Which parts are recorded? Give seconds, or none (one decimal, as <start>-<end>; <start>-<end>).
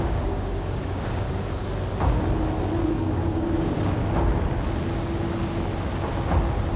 1.6-2.9; 4.0-6.8